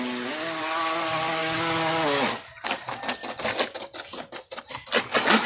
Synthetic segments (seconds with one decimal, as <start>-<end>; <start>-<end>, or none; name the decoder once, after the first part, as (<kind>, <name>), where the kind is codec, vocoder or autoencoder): none